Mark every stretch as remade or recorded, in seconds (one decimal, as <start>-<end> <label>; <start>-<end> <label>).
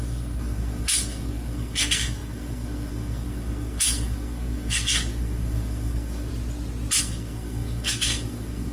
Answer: 0.0-6.3 remade; 6.3-7.0 recorded; 7.0-8.7 remade